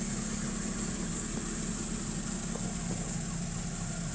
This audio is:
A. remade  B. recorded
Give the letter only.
B